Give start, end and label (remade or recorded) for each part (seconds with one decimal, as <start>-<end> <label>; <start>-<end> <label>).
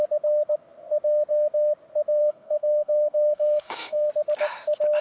0.0-2.2 recorded; 2.2-4.1 remade; 4.1-5.0 recorded